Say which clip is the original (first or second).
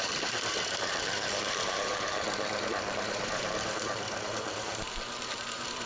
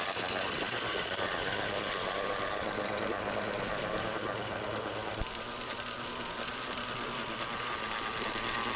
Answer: second